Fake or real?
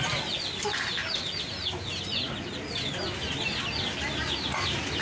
real